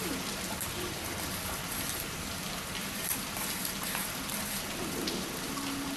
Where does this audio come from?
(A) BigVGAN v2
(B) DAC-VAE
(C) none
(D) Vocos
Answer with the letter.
A